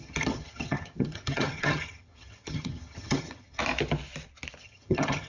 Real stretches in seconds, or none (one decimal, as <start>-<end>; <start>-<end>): 3.6-4.6